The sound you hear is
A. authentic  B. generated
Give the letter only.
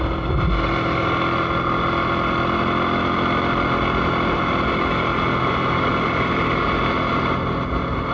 A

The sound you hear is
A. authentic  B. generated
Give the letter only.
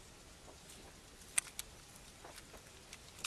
A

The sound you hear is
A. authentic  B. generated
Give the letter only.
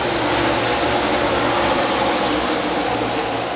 A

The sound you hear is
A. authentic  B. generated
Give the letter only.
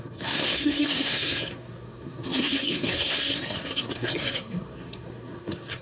B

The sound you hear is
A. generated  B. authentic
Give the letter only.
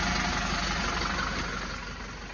B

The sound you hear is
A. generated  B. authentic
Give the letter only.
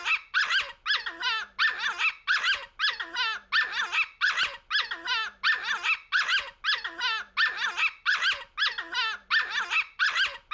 B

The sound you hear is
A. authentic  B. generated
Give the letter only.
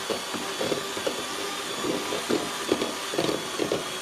A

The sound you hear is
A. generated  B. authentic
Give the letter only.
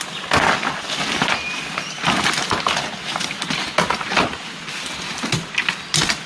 B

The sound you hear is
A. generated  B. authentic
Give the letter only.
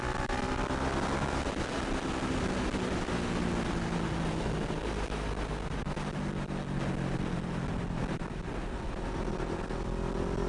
B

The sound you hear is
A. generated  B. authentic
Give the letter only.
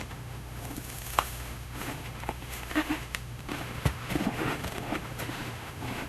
A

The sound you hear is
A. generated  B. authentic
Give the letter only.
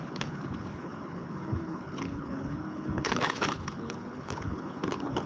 A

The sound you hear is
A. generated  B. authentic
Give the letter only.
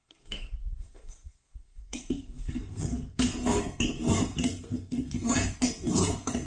A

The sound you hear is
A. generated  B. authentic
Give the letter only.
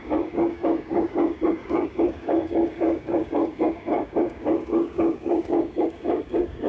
A